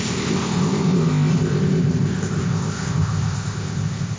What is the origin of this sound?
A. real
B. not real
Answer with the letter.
B